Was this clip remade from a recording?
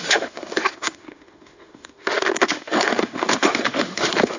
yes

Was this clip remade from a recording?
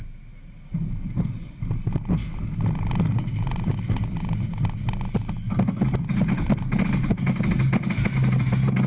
no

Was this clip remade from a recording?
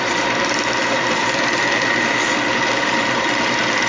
no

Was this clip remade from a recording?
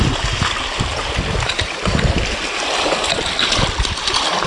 no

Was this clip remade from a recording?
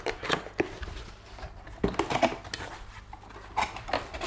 no